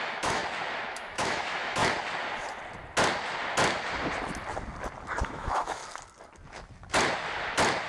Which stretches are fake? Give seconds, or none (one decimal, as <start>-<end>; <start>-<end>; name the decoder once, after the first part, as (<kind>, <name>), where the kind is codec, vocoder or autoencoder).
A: 0.0-0.4 (autoencoder, DAC-VAE); 0.9-1.8; 5.2-5.8

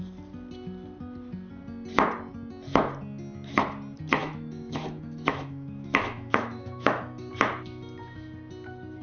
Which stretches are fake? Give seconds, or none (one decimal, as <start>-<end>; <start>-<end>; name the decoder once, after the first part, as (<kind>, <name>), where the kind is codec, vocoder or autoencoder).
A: 4.2-7.3 (autoencoder, DAC-VAE)

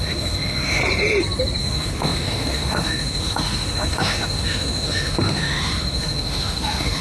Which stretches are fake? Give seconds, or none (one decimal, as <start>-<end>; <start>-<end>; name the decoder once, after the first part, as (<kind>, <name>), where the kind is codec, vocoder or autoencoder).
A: 0.0-0.8 (autoencoder, DAC-VAE); 1.6-7.0

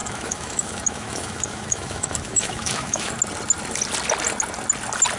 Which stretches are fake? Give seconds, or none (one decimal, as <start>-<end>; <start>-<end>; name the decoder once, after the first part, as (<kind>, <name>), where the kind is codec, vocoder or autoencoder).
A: 0.0-3.1 (autoencoder, DAC-VAE)

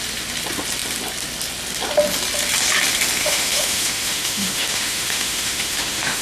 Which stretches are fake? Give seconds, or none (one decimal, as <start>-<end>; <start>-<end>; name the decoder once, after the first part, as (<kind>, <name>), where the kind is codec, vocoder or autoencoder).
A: 3.2-6.2 (autoencoder, DAC-VAE)

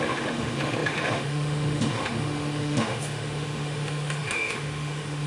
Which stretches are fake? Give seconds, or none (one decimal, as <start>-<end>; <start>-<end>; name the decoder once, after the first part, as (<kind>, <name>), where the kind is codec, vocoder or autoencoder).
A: 0.0-5.3 (autoencoder, DAC-VAE)